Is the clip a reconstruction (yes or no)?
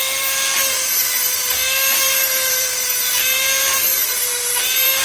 yes